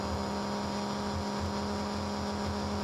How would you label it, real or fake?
real